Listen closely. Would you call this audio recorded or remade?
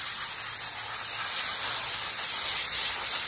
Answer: recorded